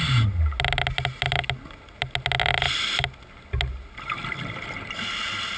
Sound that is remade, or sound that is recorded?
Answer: recorded